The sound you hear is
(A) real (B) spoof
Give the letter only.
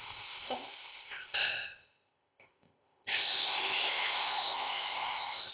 B